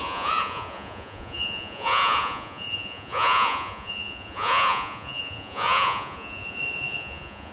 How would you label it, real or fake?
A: fake